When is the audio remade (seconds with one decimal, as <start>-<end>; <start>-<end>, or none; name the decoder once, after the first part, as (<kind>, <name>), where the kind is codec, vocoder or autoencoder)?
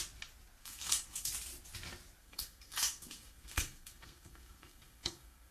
0.6-1.3 (codec, SNAC); 2.2-5.5